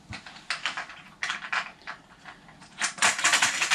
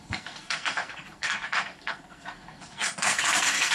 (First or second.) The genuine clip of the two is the first